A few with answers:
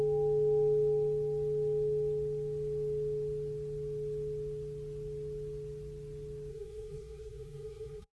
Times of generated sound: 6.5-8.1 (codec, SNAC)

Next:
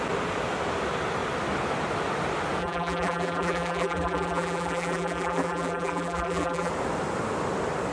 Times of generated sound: 2.6-6.7 (vocoder, BigVGAN v2)

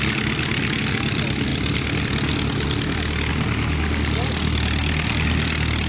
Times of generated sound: none

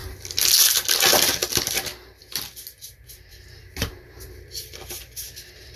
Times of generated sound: none